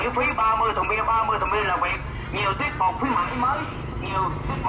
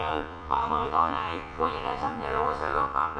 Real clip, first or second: first